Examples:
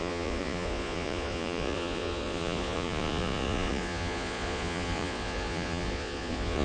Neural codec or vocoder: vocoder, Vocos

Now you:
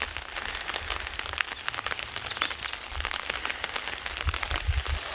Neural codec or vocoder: none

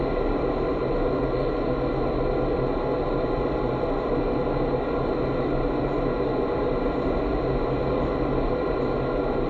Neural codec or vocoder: none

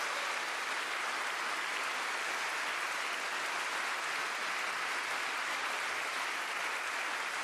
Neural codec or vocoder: none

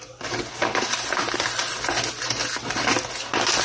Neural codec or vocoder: none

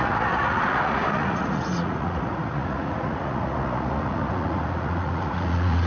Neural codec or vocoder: vocoder, Vocos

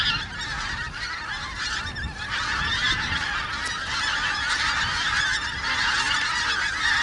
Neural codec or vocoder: none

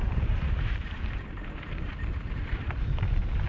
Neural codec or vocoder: vocoder, BigVGAN v2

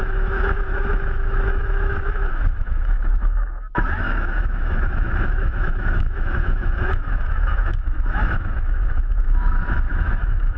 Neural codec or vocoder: autoencoder, DAC-VAE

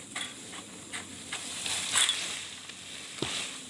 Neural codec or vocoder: none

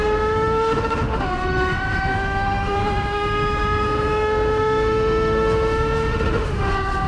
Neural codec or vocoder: autoencoder, DAC-VAE